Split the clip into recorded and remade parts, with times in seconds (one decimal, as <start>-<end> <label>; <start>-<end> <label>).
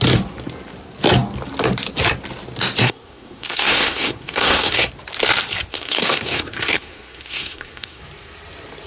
0.0-2.8 recorded; 2.8-4.9 remade; 4.9-5.7 recorded; 5.7-8.0 remade; 8.0-8.9 recorded